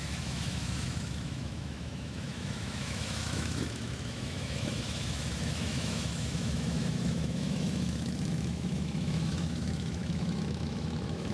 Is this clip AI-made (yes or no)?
yes